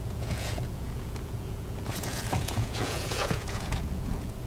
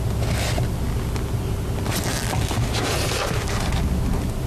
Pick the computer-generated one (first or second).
first